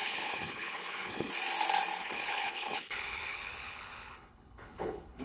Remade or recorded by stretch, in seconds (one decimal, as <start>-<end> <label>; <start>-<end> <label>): 0.0-1.3 remade; 1.3-2.0 recorded; 2.0-5.2 remade